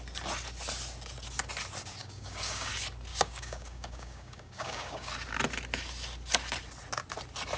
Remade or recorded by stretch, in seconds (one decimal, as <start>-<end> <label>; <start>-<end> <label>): 0.0-2.0 recorded; 2.0-2.7 remade; 2.7-3.1 recorded; 3.1-5.1 remade; 5.1-7.6 recorded